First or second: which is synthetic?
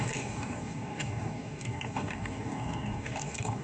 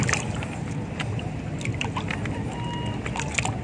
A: first